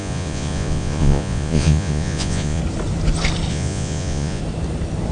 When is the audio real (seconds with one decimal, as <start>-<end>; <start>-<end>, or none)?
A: 2.6-3.5; 4.4-5.1